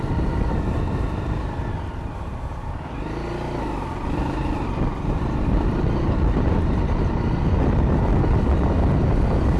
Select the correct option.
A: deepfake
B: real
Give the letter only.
B